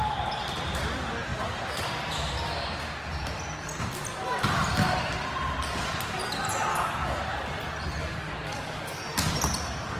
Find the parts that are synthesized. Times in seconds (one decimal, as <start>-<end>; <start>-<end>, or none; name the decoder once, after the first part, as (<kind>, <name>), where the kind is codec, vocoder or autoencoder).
6.7-7.2 (codec, DAC); 8.0-9.0